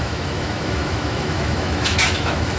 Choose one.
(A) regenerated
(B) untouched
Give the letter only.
A